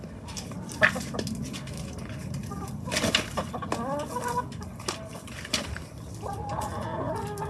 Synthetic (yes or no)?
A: no